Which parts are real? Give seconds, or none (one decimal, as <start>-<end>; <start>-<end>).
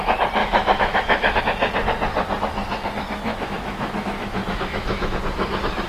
0.0-0.4; 1.4-3.3; 5.2-5.9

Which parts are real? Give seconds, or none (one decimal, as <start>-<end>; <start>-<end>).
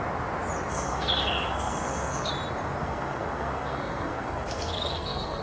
0.0-0.7; 2.3-2.8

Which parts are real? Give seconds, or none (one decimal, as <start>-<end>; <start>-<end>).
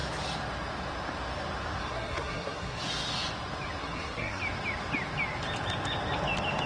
0.0-1.8; 2.8-3.8; 4.4-6.7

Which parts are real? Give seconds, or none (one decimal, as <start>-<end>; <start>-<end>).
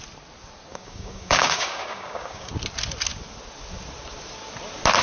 0.0-0.7; 2.5-5.0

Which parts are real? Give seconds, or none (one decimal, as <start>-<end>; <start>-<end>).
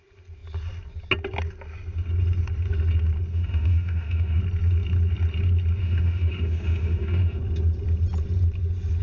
0.0-3.3; 4.4-5.8; 7.4-9.0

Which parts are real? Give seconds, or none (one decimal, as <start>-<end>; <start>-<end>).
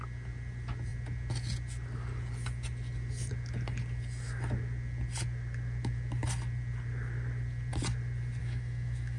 0.0-8.4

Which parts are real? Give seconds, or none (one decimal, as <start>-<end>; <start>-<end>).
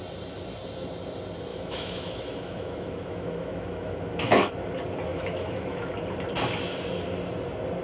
0.0-1.5; 4.5-5.1; 5.9-7.8